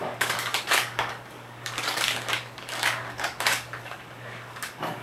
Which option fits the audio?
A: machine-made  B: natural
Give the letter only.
A